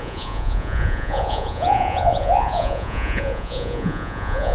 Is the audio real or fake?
fake